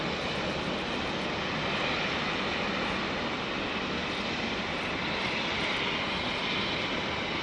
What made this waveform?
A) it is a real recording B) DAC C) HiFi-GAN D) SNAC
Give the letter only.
A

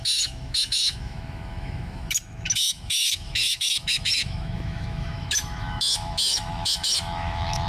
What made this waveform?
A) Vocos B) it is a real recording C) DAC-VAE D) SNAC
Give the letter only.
C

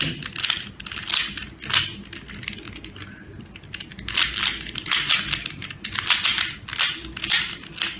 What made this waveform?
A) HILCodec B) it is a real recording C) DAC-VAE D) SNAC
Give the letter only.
B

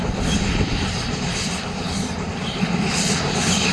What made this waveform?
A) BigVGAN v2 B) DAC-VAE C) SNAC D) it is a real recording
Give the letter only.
D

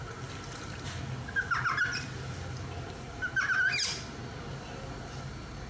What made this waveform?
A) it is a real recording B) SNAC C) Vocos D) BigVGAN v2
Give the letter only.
A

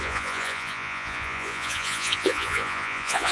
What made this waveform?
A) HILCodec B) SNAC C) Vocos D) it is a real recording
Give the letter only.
C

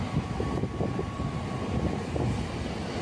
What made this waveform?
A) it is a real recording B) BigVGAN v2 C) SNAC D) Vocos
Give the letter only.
A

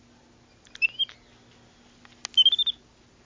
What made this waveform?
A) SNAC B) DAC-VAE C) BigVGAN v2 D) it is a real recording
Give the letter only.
D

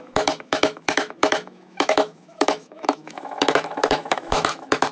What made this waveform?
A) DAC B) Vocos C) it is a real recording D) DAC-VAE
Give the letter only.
D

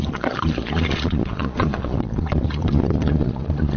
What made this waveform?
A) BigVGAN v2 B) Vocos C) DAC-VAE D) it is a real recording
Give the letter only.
B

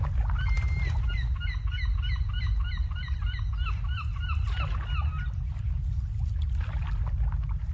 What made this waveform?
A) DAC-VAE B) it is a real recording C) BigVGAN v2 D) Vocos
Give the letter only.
B